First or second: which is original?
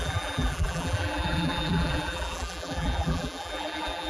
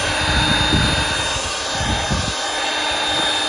second